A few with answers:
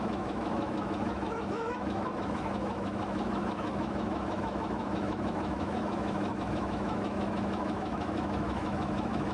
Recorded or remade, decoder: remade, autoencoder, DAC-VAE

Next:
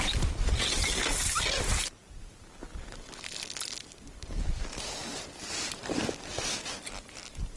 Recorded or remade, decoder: recorded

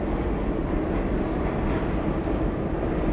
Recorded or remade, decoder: recorded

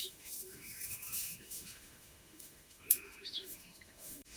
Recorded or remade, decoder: remade, autoencoder, DAC-VAE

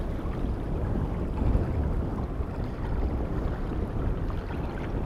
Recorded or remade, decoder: recorded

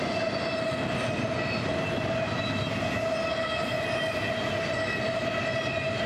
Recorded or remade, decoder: recorded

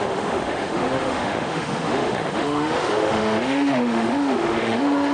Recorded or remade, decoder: remade, autoencoder, DAC-VAE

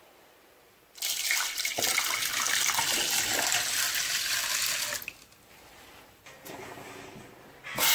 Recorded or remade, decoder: recorded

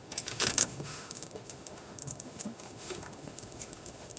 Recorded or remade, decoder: remade, autoencoder, DAC-VAE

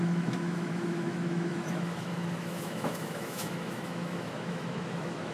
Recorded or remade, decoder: remade, autoencoder, DAC-VAE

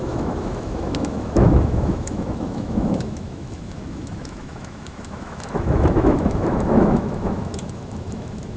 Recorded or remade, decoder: remade, autoencoder, DAC-VAE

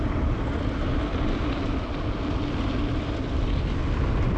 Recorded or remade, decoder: recorded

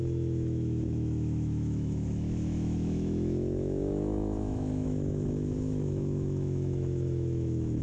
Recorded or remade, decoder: remade, autoencoder, DAC-VAE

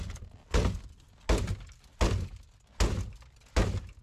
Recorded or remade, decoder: recorded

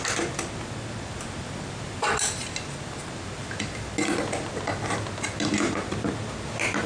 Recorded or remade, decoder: recorded